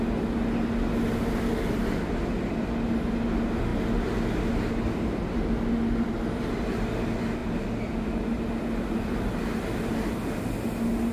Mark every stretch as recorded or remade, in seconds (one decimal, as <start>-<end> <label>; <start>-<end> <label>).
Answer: 0.0-11.1 recorded